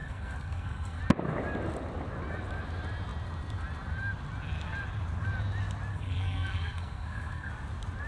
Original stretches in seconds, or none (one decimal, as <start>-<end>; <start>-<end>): 1.0-5.9; 7.5-8.1